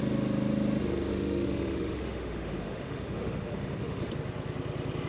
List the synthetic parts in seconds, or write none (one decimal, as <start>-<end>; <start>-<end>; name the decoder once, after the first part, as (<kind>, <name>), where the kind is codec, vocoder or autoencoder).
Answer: 1.1-4.1 (autoencoder, DAC-VAE)